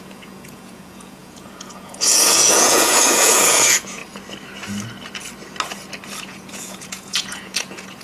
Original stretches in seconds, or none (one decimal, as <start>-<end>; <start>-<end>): 4.0-6.2